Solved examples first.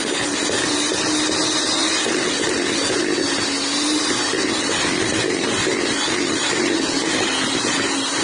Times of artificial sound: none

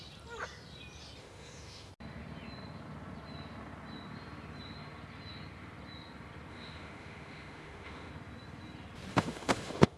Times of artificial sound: 1.2-1.9 (autoencoder, DAC-VAE); 6.5-8.1; 9.1-10.0

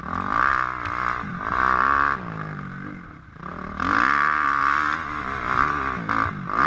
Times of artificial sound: none

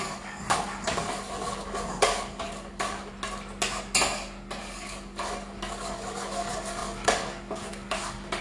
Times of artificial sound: 0.0-3.1 (codec, DAC); 4.6-8.4

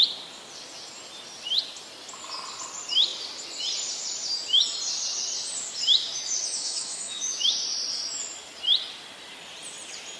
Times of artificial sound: 6.0-7.5 (autoencoder, DAC-VAE)

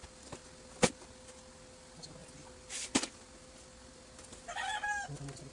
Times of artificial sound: none

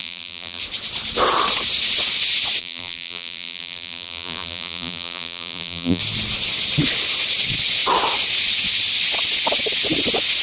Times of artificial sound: 0.0-0.6 (vocoder, BigVGAN v2); 2.6-6.0

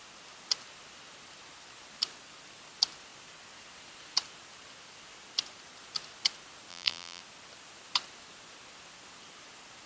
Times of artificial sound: 6.7-7.2 (vocoder, BigVGAN v2)